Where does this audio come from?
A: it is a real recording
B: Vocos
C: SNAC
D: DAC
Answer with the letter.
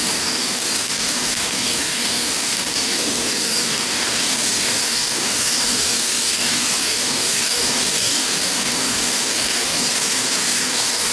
D